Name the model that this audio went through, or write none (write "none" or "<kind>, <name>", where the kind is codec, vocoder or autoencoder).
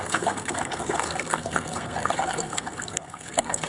codec, SNAC